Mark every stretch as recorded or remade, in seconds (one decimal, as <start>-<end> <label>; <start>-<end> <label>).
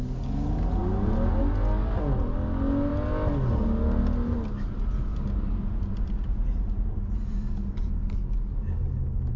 0.0-9.4 recorded